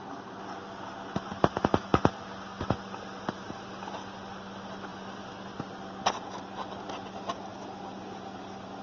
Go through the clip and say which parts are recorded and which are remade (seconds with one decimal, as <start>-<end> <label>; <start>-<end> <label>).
0.0-8.8 recorded